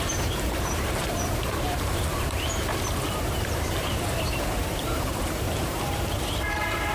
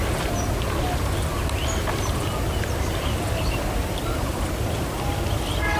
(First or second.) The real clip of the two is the second